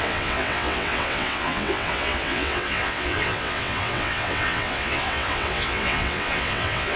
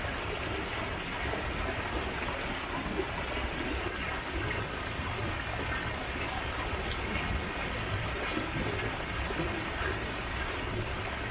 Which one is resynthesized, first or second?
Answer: first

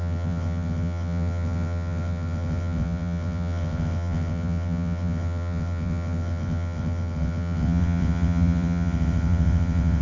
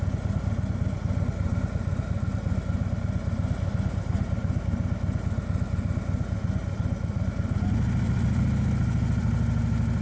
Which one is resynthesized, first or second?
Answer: first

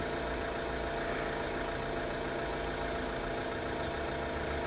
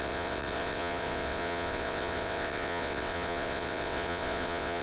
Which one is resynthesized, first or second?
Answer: second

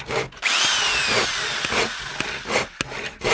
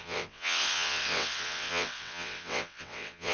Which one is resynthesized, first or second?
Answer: second